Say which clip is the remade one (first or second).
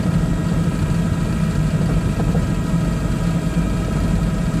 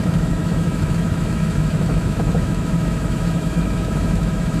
second